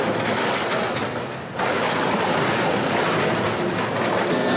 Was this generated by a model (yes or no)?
no